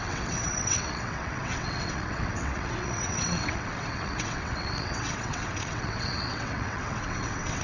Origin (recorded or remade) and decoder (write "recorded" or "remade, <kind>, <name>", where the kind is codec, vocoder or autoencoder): remade, vocoder, WaveNeXt